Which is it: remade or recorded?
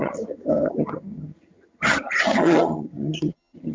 remade